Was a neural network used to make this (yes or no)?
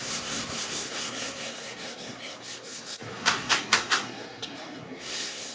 yes